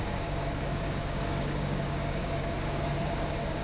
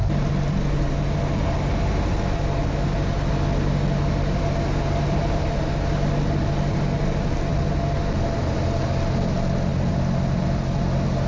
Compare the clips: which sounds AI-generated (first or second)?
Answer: first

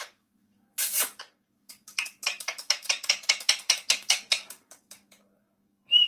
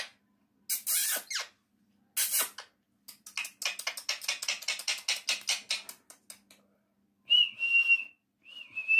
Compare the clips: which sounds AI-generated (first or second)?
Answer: first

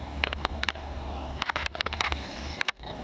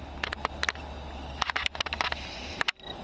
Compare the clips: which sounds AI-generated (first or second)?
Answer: first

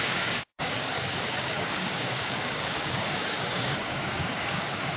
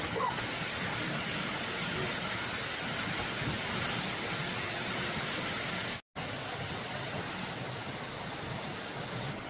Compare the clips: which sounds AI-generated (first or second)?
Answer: first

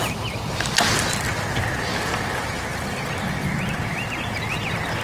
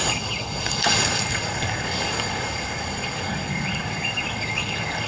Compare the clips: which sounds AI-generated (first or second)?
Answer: second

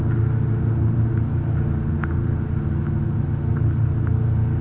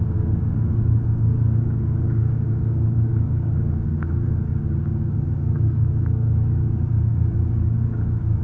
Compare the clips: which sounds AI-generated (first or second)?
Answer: second